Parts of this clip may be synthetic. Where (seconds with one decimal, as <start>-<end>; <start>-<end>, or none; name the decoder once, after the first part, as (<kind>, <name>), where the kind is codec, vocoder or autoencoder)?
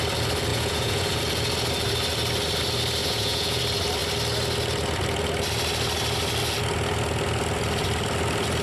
0.5-1.2 (vocoder, Vocos); 3.0-3.6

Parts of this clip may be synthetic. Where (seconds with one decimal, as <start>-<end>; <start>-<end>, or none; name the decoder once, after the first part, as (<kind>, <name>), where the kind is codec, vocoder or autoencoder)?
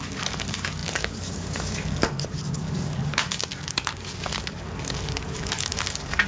0.0-6.3 (codec, DAC)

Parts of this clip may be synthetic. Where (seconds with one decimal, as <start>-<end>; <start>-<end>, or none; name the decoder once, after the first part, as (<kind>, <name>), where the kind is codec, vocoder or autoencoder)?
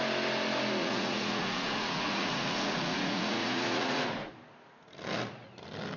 0.8-4.3 (vocoder, Vocos)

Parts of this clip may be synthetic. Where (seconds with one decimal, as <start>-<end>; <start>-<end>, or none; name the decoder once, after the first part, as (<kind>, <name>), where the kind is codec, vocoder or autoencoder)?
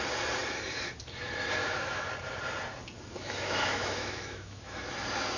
1.6-2.1 (autoencoder, DAC-VAE); 3.1-4.9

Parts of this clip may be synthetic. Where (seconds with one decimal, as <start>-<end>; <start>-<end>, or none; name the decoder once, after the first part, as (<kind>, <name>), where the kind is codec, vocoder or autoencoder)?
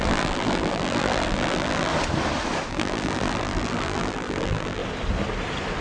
0.0-1.9 (vocoder, BigVGAN v2); 2.7-4.8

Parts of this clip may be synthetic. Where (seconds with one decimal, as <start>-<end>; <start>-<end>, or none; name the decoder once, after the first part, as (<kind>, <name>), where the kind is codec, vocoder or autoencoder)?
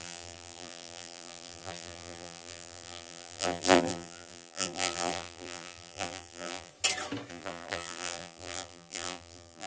0.0-6.7 (vocoder, BigVGAN v2); 7.3-9.7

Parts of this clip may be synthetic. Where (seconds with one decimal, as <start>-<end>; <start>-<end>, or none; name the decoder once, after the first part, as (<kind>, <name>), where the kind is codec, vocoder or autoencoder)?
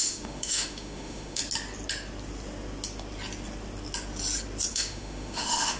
0.0-1.4 (autoencoder, DAC-VAE); 4.7-5.8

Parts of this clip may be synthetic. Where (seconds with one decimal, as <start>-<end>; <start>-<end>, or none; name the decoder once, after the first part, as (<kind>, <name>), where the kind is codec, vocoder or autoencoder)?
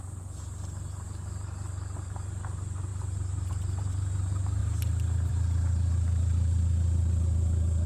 none